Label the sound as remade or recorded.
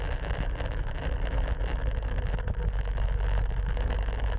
remade